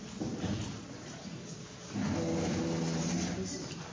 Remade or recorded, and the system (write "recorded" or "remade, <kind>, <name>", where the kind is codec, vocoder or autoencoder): recorded